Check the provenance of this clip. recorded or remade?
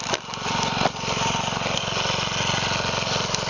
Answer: recorded